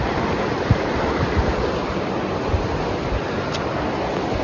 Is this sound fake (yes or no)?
no